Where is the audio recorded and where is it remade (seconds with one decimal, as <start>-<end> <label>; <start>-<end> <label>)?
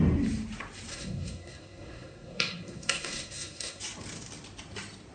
0.0-0.9 recorded; 0.9-3.8 remade; 3.8-5.1 recorded